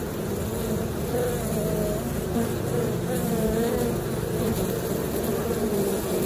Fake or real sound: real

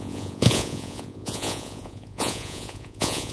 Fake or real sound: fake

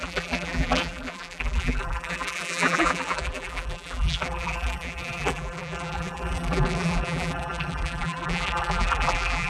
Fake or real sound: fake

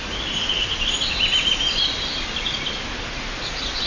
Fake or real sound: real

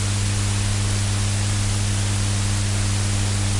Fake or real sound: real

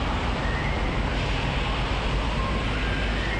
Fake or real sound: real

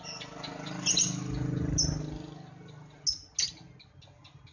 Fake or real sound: real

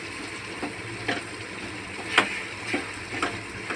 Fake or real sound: real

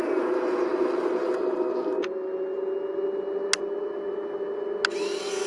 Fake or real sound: real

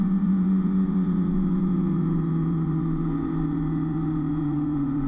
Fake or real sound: fake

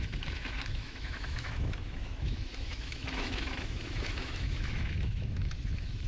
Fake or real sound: fake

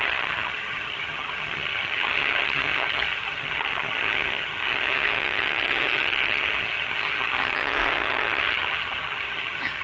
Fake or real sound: fake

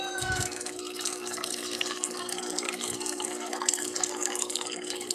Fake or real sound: fake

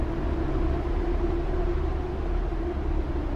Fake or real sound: real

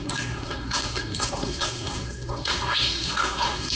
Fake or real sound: fake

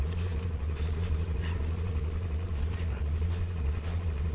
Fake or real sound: fake